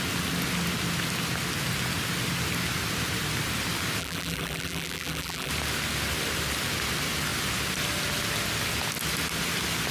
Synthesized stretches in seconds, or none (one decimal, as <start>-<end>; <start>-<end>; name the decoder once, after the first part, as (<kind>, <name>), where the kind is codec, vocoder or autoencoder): 4.0-5.5 (vocoder, BigVGAN v2)